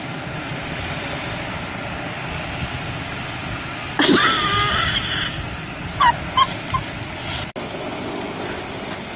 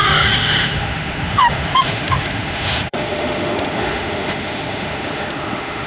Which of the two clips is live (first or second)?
first